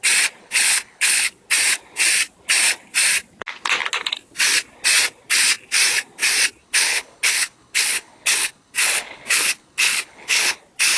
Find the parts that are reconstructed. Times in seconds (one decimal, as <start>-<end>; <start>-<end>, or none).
0.4-1.3; 6.6-10.6